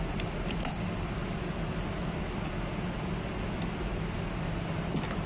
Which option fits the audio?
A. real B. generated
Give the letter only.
A